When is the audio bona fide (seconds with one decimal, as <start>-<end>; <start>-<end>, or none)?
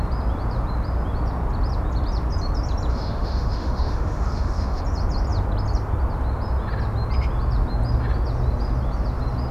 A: 0.0-2.9; 4.8-9.5